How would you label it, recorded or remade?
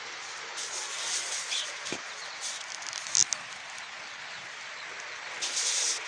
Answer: recorded